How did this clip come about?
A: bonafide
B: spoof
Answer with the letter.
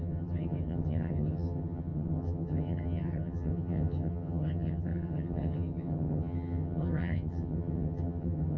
B